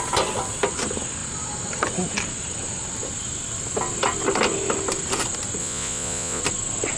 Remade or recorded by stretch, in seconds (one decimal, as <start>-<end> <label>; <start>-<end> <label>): 0.0-5.6 recorded; 5.6-6.4 remade; 6.4-7.0 recorded